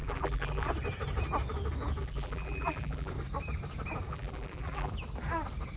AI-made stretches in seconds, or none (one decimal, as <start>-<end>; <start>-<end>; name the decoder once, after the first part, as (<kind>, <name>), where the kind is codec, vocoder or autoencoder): 0.0-0.7 (vocoder, BigVGAN v2); 2.0-3.1; 4.1-4.9